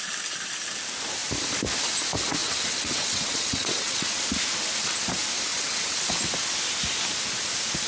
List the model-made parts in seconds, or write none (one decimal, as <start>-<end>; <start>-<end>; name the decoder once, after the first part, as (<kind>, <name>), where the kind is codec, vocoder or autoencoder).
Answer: 2.4-4.2 (vocoder, WaveNeXt); 5.5-6.0